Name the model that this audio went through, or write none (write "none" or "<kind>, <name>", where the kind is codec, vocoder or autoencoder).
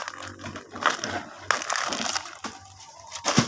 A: none